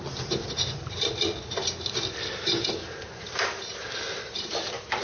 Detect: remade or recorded recorded